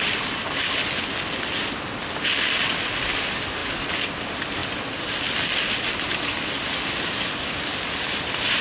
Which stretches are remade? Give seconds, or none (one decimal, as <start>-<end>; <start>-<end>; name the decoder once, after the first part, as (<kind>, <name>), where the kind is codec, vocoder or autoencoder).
none